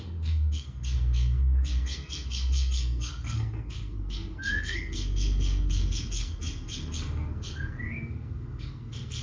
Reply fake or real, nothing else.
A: fake